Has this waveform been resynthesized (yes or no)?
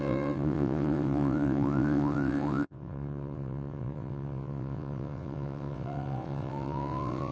yes